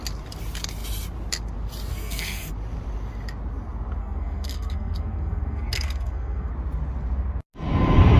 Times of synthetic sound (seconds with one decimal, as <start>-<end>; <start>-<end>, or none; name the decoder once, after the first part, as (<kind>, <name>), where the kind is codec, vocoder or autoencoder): 1.9-2.5 (codec, SNAC); 4.0-6.5